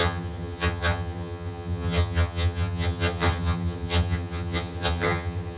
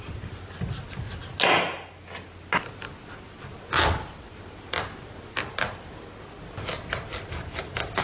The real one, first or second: second